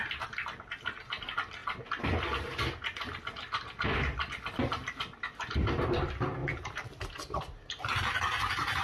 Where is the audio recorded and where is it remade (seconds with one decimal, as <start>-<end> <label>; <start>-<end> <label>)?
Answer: 0.0-8.8 recorded